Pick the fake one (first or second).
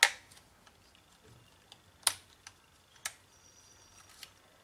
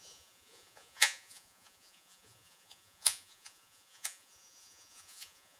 second